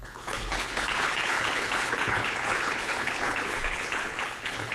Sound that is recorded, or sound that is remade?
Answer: remade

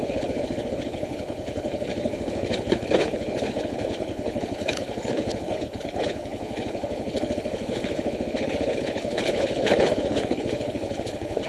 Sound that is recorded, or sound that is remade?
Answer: remade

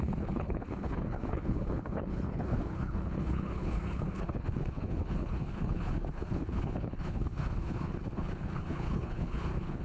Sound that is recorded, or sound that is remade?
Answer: remade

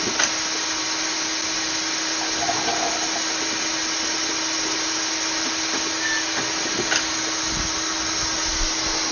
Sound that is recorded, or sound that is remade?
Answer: recorded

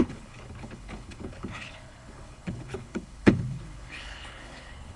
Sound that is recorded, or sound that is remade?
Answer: remade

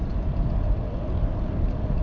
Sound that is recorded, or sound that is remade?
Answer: recorded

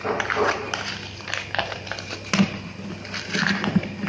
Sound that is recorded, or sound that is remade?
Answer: recorded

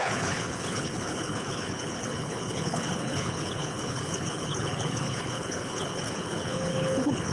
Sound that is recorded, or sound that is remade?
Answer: remade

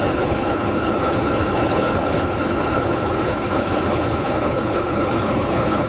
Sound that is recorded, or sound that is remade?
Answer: remade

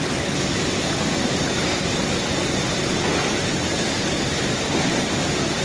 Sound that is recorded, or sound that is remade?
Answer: recorded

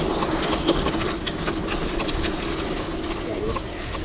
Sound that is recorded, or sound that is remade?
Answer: recorded